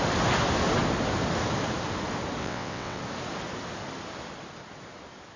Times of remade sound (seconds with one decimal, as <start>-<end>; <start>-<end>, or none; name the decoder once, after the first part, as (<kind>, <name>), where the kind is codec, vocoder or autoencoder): 2.4-3.0 (vocoder, WaveNeXt)